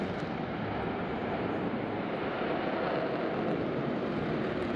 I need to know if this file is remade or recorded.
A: recorded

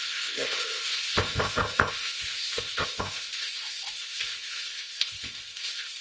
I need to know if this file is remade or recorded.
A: remade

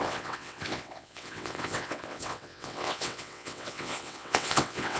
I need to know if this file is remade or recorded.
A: remade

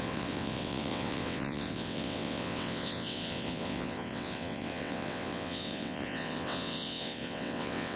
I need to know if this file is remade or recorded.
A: remade